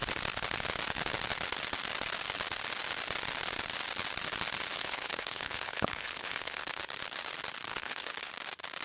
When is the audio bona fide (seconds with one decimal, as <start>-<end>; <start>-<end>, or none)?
0.0-4.8; 6.8-7.7; 8.3-8.8